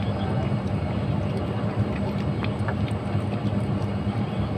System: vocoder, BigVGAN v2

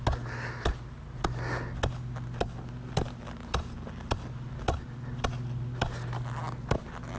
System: none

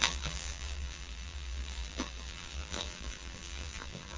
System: vocoder, BigVGAN v2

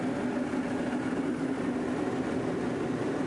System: none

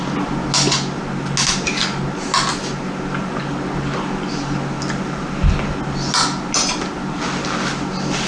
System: none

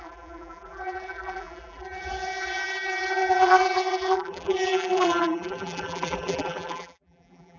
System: vocoder, BigVGAN v2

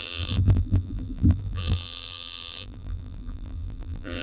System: vocoder, BigVGAN v2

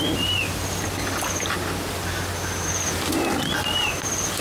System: none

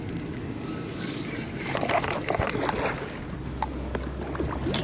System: none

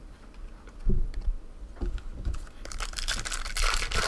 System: vocoder, BigVGAN v2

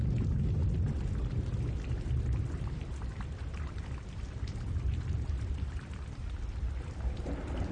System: none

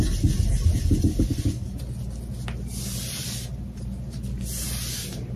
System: none